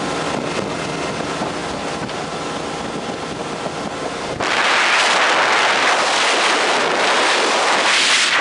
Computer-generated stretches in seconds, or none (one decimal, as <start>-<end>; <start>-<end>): none